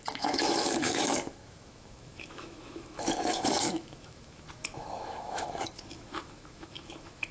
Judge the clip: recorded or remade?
remade